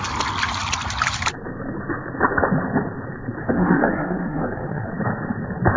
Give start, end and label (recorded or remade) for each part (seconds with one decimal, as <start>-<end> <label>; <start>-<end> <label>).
0.0-3.4 recorded; 3.4-4.9 remade; 4.9-5.8 recorded